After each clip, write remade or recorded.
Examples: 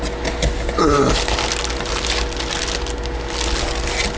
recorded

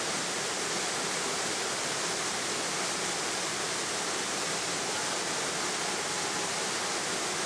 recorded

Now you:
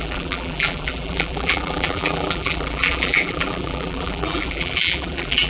remade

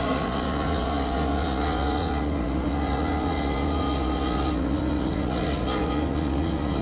remade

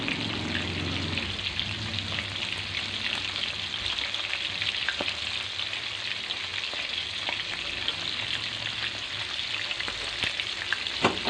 recorded